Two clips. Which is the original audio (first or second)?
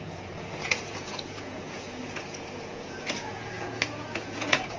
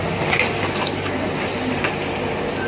second